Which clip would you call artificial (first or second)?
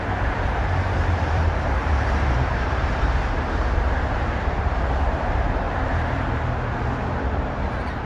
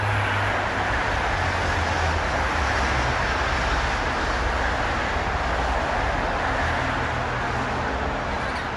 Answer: first